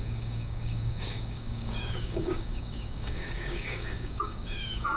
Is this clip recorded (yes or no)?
no